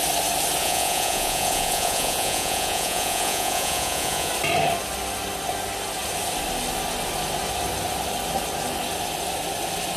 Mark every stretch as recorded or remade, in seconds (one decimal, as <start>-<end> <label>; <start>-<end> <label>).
0.0-0.6 recorded; 0.6-4.3 remade; 4.3-10.0 recorded